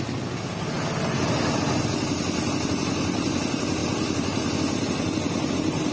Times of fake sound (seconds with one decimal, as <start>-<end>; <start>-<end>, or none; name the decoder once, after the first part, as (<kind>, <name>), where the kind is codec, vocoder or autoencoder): none